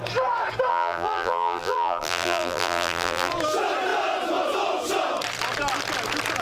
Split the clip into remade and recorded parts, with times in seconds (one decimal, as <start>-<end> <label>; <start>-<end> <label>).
0.0-0.7 recorded; 0.7-3.3 remade; 3.3-6.4 recorded